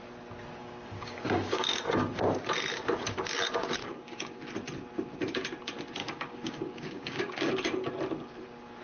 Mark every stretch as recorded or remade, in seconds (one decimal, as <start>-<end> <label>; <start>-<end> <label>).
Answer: 0.0-0.6 recorded; 0.6-1.8 remade; 1.8-3.8 recorded; 3.8-4.4 remade; 4.4-6.0 recorded; 6.0-7.5 remade; 7.5-8.8 recorded